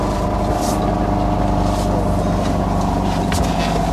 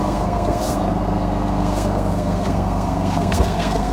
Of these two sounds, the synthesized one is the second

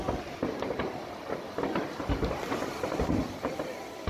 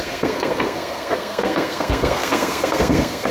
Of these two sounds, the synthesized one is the second